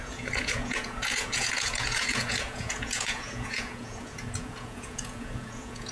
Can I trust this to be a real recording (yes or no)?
no